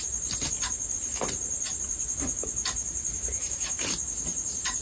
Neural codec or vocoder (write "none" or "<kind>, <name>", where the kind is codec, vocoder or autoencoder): none